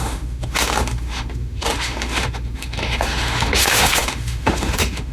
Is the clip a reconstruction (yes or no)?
yes